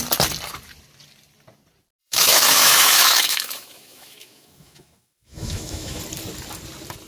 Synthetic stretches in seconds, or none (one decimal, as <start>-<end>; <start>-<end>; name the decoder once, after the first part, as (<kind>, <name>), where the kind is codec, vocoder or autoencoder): 2.0-6.0 (autoencoder, DAC-VAE)